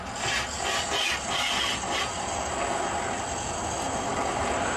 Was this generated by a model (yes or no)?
no